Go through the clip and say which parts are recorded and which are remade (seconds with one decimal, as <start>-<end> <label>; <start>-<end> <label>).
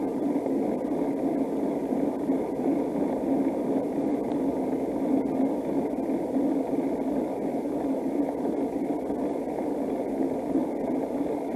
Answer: 0.0-11.6 recorded